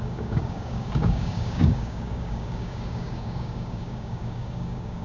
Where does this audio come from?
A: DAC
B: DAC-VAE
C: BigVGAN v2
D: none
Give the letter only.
A